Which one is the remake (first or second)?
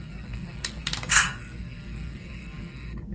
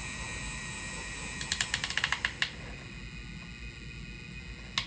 first